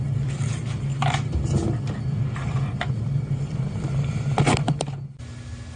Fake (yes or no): no